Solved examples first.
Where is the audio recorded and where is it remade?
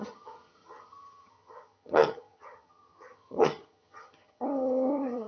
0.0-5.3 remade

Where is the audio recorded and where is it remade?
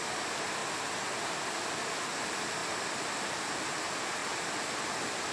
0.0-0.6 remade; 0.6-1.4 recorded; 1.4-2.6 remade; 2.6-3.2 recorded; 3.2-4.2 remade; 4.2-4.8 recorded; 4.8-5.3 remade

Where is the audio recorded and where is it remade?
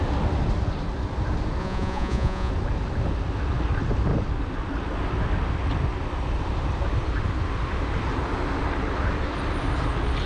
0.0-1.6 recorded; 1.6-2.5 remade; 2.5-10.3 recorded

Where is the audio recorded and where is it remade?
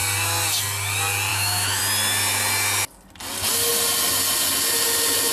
0.0-1.3 recorded; 1.3-1.8 remade; 1.8-5.3 recorded